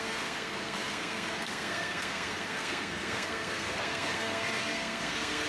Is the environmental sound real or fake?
fake